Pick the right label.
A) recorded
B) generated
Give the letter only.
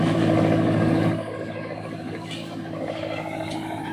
B